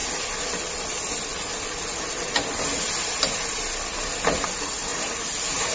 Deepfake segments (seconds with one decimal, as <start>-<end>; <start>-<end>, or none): none